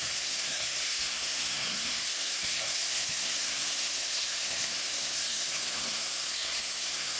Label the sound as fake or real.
fake